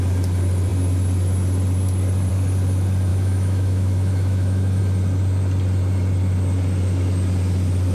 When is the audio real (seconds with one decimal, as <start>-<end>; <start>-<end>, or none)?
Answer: 0.0-3.1; 4.8-7.9